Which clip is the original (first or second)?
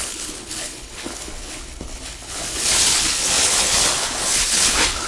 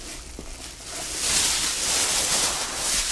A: second